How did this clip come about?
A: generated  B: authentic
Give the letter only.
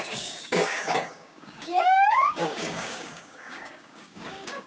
A